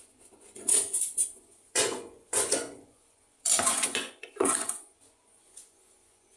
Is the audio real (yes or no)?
no